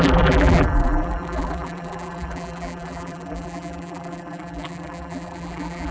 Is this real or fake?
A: fake